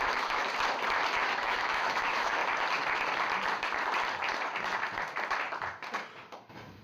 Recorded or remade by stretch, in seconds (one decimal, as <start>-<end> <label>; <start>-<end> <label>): 0.0-0.4 remade; 0.4-1.2 recorded; 1.2-2.4 remade; 2.4-6.8 recorded